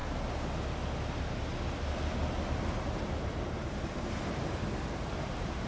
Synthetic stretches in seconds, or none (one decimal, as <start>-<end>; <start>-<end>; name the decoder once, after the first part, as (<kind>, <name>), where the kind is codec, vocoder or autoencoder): 2.8-5.7 (vocoder, BigVGAN v2)